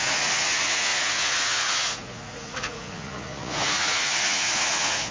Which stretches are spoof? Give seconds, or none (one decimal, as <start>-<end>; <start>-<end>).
0.0-5.1